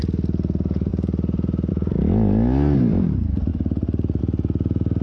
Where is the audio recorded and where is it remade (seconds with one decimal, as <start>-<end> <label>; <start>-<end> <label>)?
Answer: 0.0-5.0 recorded